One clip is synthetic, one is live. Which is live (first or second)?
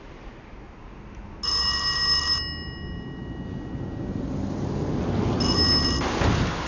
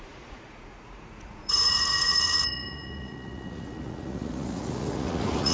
first